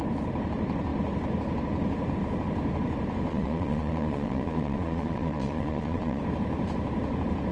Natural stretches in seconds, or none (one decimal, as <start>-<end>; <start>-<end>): 0.0-3.3; 6.2-7.5